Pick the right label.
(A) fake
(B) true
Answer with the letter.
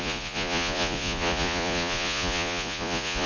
A